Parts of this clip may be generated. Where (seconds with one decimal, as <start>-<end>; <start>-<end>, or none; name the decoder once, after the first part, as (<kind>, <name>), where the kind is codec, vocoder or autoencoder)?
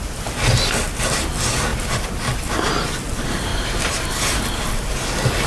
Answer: 3.5-4.1 (vocoder, BigVGAN v2)